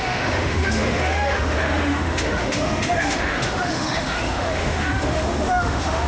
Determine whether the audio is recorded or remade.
remade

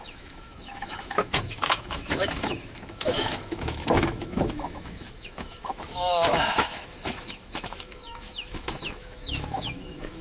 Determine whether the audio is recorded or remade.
remade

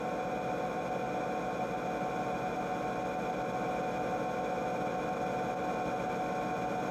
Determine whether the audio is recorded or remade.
recorded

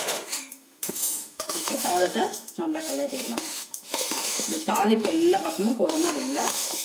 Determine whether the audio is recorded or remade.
remade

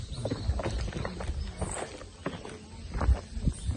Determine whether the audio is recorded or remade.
recorded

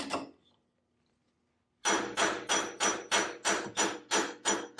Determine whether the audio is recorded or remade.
recorded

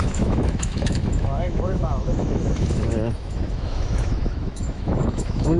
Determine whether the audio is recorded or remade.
remade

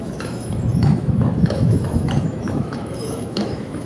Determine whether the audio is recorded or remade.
remade